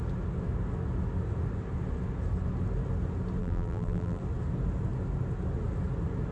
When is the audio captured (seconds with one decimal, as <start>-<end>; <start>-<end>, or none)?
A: 0.0-3.4; 4.2-6.3